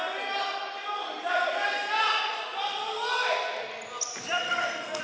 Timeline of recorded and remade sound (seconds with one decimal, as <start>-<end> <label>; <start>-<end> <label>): 0.0-4.4 recorded; 4.4-5.0 remade